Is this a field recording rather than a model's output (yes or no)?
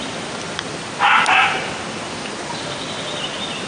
yes